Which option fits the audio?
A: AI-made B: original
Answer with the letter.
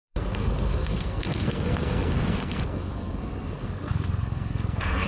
A